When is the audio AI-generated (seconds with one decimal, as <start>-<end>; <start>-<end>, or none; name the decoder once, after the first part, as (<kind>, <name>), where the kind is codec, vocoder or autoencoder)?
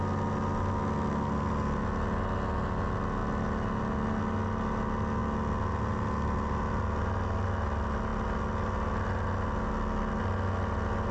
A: none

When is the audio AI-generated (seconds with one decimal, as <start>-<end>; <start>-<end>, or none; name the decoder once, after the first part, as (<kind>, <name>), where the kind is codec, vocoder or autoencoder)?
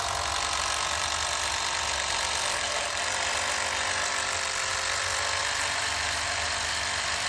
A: none